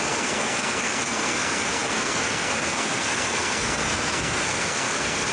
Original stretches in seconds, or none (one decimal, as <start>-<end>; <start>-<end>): none